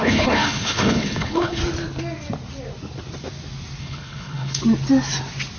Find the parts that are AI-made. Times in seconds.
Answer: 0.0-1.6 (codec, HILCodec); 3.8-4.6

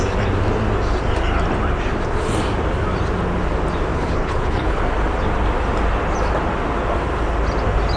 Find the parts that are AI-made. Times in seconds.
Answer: 3.9-4.8 (codec, HILCodec)

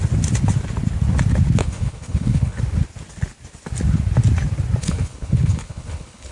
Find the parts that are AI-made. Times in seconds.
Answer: 1.6-2.6 (codec, HILCodec); 4.8-6.3

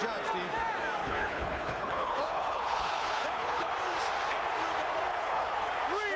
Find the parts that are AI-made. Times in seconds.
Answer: 1.0-3.7 (codec, HILCodec); 5.1-5.7